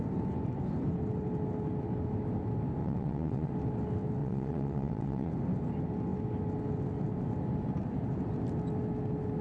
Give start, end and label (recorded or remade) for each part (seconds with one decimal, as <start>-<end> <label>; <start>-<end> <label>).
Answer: 0.0-2.8 recorded; 2.8-3.5 remade; 3.5-4.2 recorded; 4.2-5.3 remade; 5.3-9.4 recorded